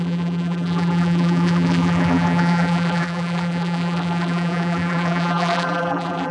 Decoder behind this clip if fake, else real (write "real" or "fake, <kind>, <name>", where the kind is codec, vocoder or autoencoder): fake, vocoder, BigVGAN v2